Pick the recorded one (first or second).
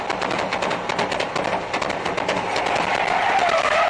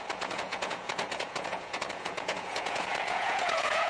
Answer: first